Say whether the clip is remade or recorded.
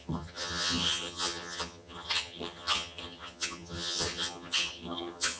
remade